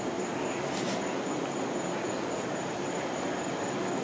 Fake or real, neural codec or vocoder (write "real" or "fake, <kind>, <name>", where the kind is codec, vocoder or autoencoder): real